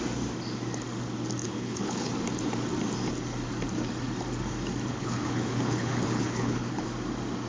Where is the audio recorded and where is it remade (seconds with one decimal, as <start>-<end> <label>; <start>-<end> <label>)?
0.0-1.4 recorded; 1.4-2.1 remade; 2.1-4.9 recorded; 4.9-6.9 remade; 6.9-7.5 recorded